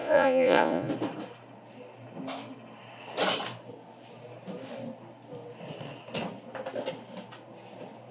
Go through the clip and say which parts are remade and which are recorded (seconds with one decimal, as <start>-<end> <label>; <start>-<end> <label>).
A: 0.0-0.9 remade; 0.9-8.1 recorded